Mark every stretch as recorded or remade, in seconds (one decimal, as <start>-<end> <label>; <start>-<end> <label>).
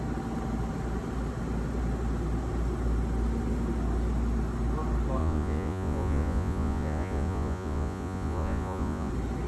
0.0-5.2 recorded; 5.2-9.1 remade; 9.1-9.5 recorded